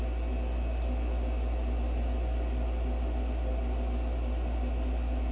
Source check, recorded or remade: recorded